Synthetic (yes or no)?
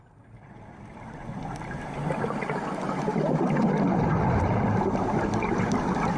no